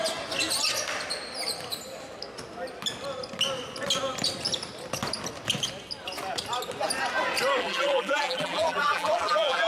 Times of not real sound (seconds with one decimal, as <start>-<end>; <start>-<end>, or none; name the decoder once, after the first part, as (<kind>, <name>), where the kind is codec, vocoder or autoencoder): 7.6-9.7 (vocoder, BigVGAN v2)